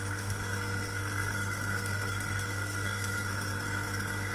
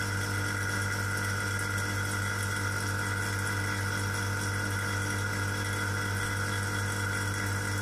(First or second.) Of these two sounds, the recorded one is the second